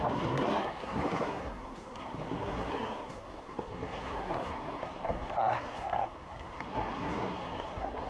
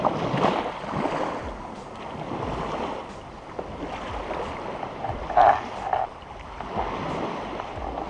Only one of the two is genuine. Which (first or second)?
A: second